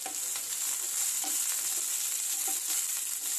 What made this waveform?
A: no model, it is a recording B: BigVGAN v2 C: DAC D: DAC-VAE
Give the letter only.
A